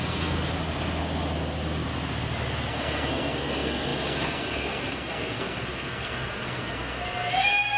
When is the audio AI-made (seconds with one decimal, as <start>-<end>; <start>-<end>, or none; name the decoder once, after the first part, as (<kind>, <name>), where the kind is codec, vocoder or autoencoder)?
0.0-0.4 (codec, SNAC); 2.7-7.8